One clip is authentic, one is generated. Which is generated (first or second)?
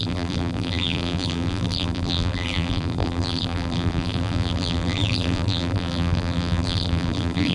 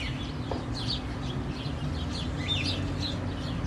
first